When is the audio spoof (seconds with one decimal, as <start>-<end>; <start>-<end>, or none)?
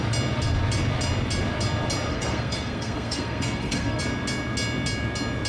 2.1-4.0